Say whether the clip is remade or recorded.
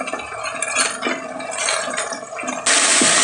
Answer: recorded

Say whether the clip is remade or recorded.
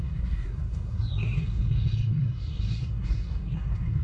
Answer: remade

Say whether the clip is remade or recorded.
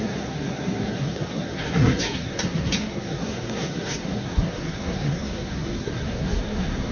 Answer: remade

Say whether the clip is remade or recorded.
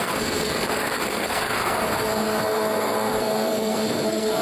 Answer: remade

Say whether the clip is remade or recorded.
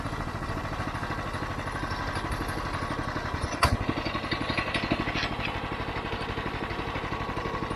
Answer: recorded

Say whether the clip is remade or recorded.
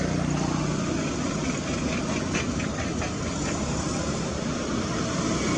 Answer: recorded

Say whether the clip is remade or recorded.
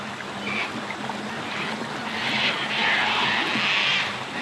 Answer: recorded